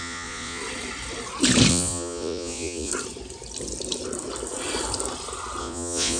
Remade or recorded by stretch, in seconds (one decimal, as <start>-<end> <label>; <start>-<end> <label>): 0.0-0.6 remade; 0.6-1.7 recorded; 1.7-2.9 remade; 2.9-5.6 recorded; 5.6-6.2 remade